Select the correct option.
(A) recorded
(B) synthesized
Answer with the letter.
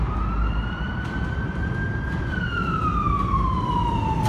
A